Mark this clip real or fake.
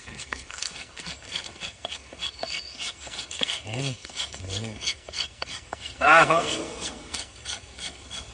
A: fake